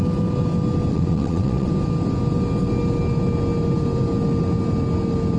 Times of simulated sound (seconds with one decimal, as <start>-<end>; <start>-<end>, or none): 0.9-1.7